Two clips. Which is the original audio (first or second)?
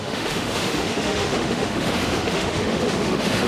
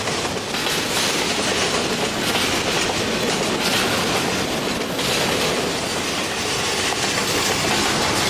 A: second